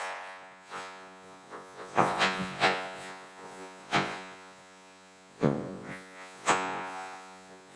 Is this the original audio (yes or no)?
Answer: no